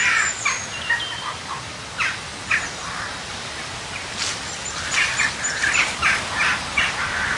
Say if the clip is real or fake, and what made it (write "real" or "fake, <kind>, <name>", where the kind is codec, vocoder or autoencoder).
real